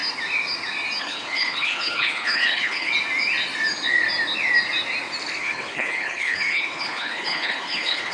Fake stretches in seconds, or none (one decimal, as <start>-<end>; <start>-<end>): 1.0-2.9; 5.4-8.1